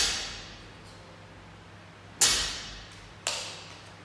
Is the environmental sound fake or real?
real